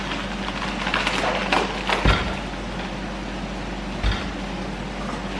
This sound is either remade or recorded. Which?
recorded